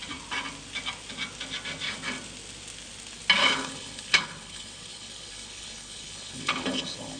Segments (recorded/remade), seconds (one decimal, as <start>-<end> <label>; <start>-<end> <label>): 0.0-3.4 recorded; 3.4-7.2 remade